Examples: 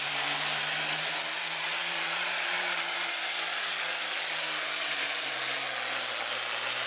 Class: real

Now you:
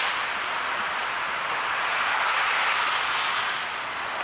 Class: real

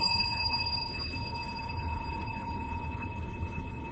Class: fake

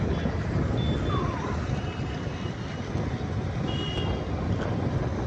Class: real